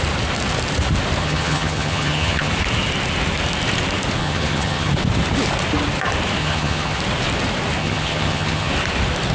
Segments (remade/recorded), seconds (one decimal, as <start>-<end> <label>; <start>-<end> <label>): 0.0-1.2 recorded; 1.2-2.5 remade; 2.5-4.2 recorded; 4.2-4.9 remade; 4.9-6.4 recorded; 6.4-7.0 remade; 7.0-7.8 recorded; 7.8-8.7 remade; 8.7-9.3 recorded